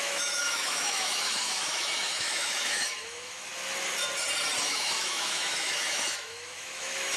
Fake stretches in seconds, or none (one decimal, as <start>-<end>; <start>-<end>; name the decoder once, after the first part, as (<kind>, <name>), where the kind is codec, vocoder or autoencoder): 0.0-3.5 (autoencoder, DAC-VAE); 4.6-7.2